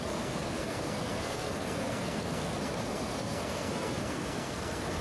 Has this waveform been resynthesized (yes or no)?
yes